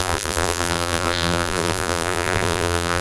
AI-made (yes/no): yes